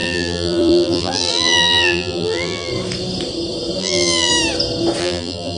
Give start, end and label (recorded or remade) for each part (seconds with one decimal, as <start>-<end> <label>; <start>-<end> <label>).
0.0-2.7 remade; 2.7-3.8 recorded; 3.8-4.3 remade; 4.3-5.0 recorded; 5.0-5.6 remade